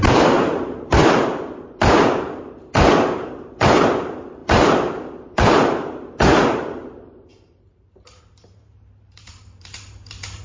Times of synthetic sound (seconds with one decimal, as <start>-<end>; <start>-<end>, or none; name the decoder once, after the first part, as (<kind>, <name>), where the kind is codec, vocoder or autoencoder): 0.0-10.4 (vocoder, BigVGAN v2)